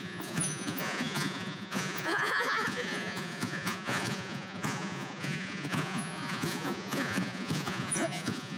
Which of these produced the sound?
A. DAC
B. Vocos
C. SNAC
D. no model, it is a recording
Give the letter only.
B